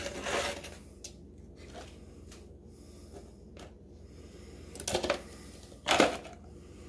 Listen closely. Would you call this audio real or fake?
real